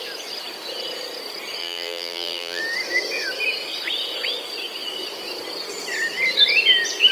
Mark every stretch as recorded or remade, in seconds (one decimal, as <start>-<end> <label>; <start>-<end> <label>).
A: 0.0-1.6 recorded; 1.6-2.6 remade; 2.6-7.1 recorded